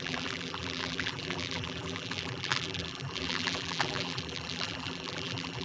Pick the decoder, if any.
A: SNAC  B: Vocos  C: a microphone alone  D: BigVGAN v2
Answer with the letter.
D